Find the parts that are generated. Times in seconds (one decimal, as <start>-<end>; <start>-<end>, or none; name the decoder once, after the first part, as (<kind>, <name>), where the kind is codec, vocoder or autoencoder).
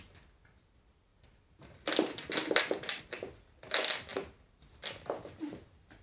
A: none